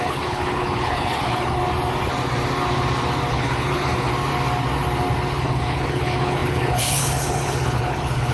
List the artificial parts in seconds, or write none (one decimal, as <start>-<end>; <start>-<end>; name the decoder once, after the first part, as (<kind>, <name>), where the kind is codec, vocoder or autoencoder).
0.0-1.6 (codec, HILCodec); 3.3-4.1; 5.4-8.3